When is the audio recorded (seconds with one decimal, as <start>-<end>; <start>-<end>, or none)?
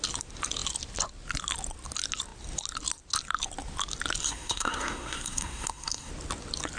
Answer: 0.0-4.2; 6.1-6.8